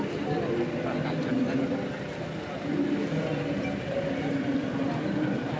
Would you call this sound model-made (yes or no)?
no